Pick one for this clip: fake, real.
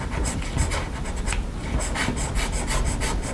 real